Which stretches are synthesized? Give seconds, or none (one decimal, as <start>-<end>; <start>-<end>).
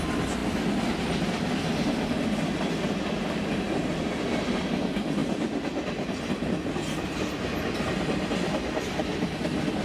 5.2-6.2